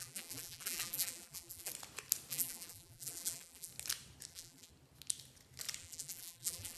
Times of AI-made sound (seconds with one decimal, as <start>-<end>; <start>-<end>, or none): 0.0-1.7; 2.3-3.7; 4.3-4.7; 5.8-6.8